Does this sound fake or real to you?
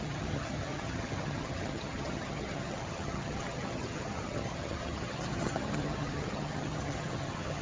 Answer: fake